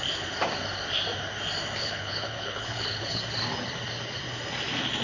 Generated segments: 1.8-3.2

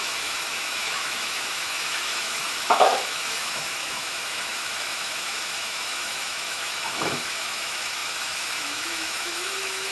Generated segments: 0.0-9.9

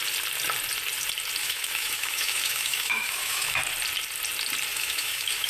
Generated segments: 1.4-3.6; 4.7-5.5